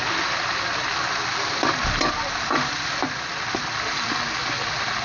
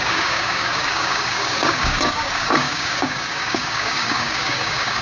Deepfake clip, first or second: second